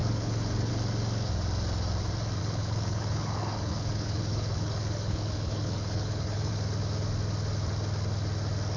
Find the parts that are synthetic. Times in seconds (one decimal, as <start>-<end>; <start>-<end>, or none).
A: 0.0-0.7; 2.4-6.5